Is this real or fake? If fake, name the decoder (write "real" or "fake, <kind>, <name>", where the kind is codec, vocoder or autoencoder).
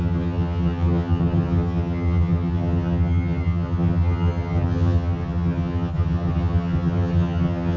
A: fake, vocoder, HiFi-GAN